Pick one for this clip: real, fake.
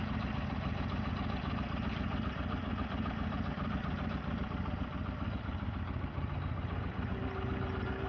real